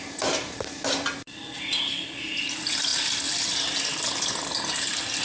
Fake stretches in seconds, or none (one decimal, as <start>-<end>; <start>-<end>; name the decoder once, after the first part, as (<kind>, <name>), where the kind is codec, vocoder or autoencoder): none